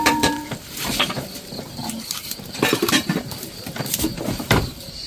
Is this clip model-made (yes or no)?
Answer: yes